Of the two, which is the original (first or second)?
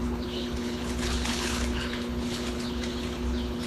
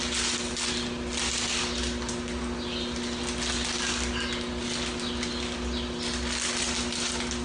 second